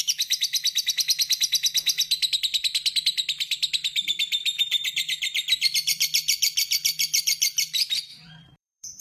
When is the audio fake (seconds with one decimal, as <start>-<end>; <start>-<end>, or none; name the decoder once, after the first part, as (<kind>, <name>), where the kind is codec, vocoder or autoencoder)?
4.5-5.3 (vocoder, BigVGAN v2); 8.1-9.0